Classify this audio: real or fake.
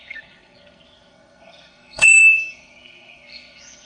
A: fake